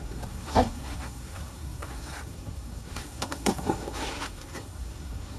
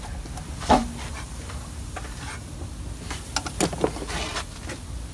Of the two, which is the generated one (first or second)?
first